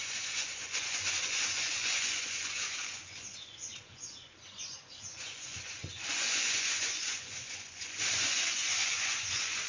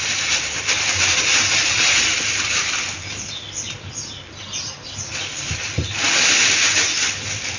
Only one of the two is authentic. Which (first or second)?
second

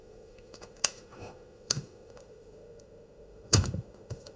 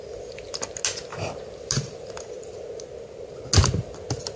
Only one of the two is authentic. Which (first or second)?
second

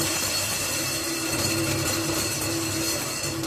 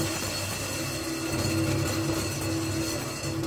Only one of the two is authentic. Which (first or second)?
second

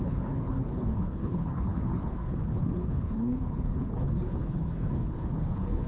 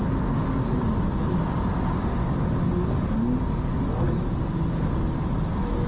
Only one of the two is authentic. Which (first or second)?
second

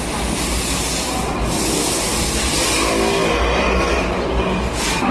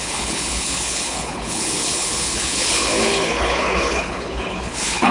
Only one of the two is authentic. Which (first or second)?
first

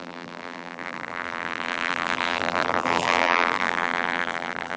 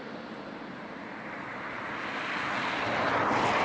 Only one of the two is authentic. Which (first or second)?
second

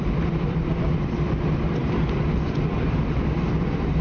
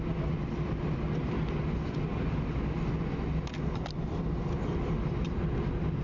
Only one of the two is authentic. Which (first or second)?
second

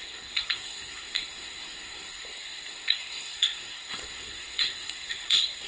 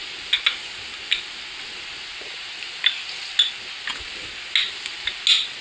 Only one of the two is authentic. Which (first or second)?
second